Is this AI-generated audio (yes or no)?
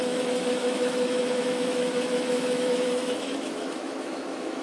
yes